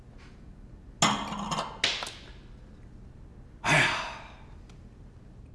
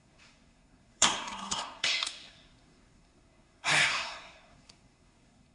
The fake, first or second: second